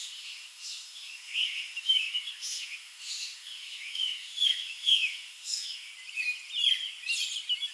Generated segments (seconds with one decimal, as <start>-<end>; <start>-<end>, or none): 0.0-5.9

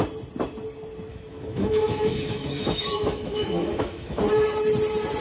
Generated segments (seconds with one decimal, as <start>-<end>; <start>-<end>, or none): 1.1-4.2

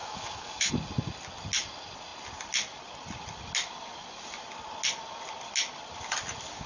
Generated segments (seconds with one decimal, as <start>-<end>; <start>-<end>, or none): 0.0-0.7

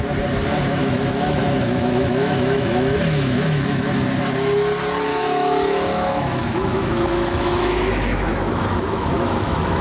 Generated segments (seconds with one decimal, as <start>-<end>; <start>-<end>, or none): 0.8-3.9; 5.1-9.8